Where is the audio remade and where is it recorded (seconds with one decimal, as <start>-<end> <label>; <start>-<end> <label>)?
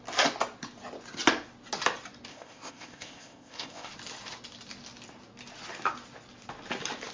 0.0-2.3 recorded; 2.3-3.9 remade; 3.9-7.1 recorded